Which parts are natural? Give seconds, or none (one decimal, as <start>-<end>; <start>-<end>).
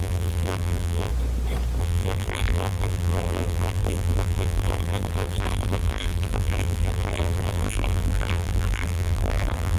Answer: 1.1-1.8